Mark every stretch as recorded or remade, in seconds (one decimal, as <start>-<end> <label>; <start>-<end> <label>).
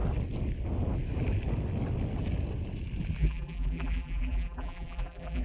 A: 0.0-3.2 recorded; 3.2-5.4 remade